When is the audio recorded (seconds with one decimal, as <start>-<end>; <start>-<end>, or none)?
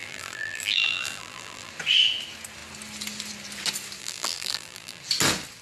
1.7-4.0; 5.0-5.6